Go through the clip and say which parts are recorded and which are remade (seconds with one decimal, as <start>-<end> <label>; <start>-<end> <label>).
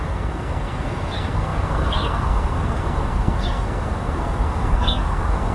0.0-5.5 remade